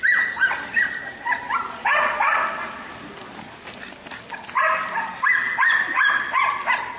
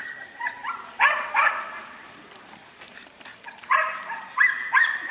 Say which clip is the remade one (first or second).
second